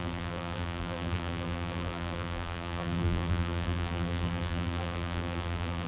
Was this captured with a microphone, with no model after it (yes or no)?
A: no